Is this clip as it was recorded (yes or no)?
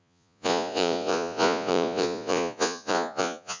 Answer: no